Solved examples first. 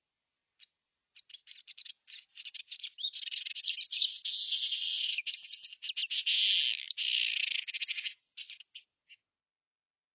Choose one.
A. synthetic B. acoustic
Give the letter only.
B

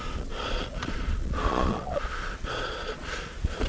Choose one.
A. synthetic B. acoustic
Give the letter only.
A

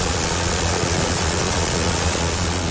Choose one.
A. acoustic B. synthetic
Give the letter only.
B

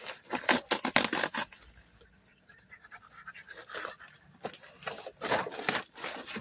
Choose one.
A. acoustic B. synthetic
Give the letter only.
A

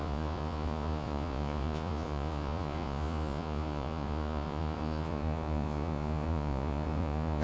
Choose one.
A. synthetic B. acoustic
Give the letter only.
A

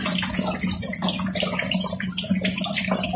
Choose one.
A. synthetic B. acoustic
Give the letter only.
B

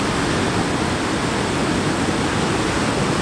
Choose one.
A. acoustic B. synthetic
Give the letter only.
A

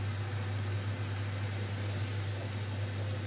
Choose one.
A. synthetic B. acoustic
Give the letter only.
B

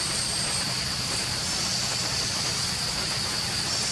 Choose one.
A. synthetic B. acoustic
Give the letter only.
B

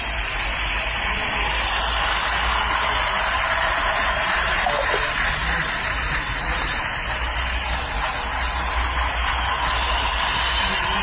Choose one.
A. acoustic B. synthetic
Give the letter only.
A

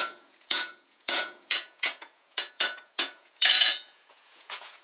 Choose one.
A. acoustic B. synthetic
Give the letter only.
B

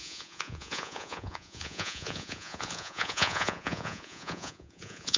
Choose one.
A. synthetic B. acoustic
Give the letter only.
A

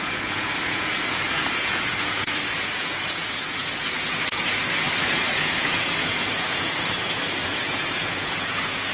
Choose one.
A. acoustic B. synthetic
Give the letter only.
B